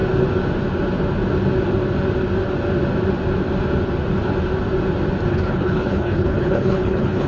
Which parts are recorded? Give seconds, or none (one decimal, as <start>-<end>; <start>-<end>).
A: 0.0-5.3